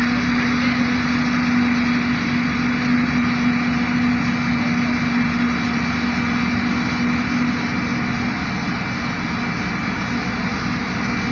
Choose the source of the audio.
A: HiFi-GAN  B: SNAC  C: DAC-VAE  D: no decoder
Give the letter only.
D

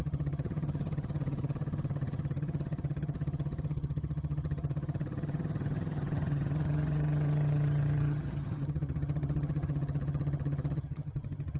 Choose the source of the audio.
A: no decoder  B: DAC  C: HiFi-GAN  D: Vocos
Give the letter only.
C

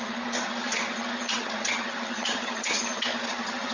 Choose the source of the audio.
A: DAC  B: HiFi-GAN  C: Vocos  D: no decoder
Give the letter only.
B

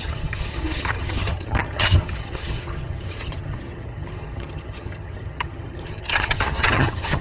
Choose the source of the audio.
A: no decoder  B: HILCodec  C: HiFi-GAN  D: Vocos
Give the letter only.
C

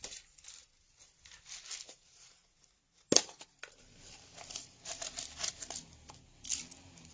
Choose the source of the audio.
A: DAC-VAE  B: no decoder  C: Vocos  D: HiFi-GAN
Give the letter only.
B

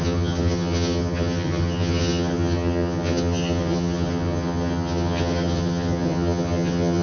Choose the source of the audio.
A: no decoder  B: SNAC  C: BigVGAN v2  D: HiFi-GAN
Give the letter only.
D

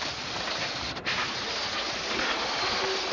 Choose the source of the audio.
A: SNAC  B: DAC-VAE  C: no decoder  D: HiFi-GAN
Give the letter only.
C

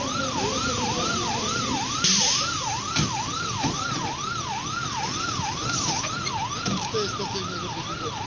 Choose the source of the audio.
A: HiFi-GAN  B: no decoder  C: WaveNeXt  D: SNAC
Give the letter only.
B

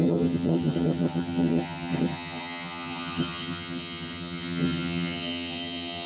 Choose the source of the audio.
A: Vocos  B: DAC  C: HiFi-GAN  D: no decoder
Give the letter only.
C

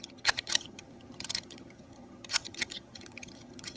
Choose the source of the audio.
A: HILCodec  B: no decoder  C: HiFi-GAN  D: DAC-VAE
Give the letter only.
C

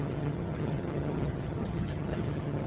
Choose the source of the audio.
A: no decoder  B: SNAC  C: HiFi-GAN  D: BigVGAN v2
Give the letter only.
C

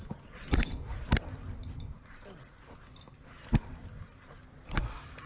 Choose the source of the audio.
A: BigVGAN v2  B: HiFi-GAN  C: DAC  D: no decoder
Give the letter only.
D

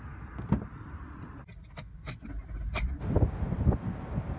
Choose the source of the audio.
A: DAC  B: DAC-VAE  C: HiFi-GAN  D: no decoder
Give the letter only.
D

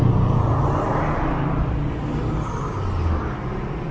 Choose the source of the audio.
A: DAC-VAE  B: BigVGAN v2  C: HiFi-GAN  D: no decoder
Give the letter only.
D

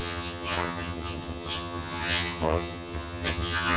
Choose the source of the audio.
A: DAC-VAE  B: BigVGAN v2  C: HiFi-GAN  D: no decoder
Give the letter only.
C